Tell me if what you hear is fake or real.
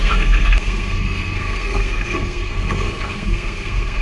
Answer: fake